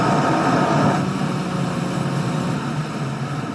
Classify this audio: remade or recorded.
recorded